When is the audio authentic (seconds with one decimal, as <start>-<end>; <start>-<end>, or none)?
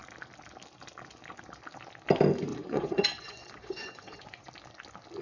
0.0-2.5; 4.5-5.2